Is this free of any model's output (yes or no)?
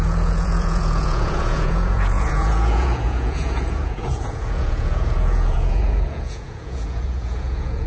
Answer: no